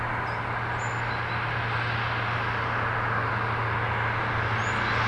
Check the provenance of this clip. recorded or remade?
recorded